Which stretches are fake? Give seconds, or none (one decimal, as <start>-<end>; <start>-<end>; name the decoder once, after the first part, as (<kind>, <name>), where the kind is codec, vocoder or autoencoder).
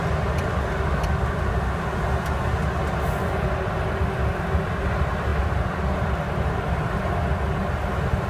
none